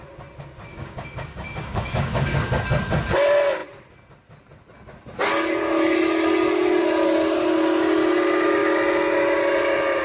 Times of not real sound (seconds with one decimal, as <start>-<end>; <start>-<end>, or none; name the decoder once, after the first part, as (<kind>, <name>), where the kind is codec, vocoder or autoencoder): 0.7-2.6 (codec, DAC)